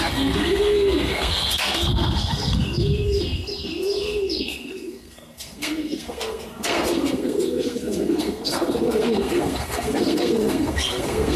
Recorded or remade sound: remade